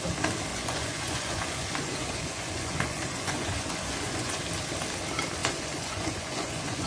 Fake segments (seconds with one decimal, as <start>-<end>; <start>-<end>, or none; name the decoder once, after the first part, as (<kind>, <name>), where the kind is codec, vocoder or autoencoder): 0.5-4.4 (vocoder, Vocos); 5.4-6.9